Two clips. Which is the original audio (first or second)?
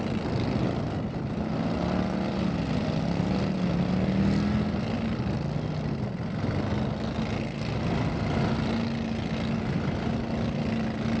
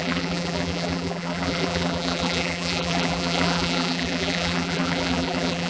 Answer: first